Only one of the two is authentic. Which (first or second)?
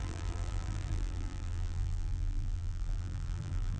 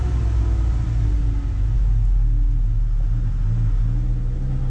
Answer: second